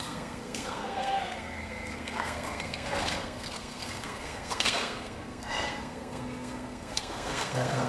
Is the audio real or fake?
fake